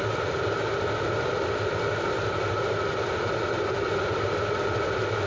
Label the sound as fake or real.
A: fake